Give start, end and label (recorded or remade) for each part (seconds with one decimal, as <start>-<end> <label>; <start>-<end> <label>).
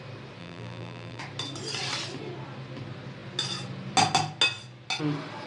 0.0-0.4 recorded; 0.4-1.2 remade; 1.2-5.5 recorded